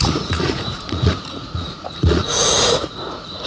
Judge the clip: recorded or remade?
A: remade